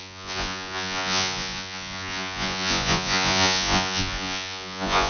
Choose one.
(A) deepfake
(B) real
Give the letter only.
A